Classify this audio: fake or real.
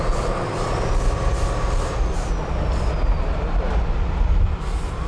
real